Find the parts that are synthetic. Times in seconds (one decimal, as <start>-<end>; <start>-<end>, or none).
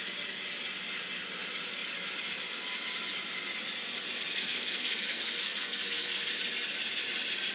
4.3-6.3